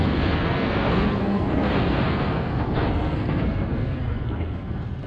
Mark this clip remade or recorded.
remade